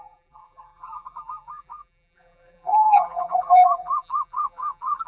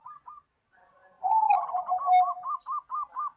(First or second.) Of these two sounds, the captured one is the second